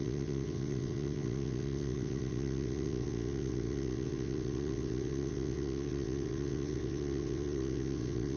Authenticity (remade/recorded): remade